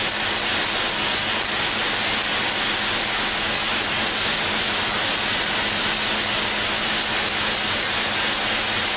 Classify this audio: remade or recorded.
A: recorded